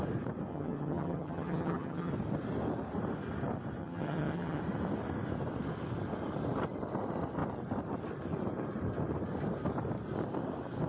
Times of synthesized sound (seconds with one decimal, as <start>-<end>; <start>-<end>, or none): 0.5-2.1; 3.8-4.6